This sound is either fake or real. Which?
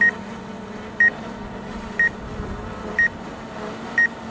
real